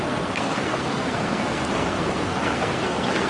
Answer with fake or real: fake